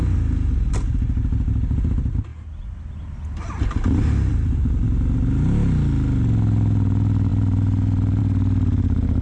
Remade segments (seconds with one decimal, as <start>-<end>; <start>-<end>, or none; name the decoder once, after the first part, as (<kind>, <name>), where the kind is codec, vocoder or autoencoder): 7.3-8.2 (vocoder, BigVGAN v2)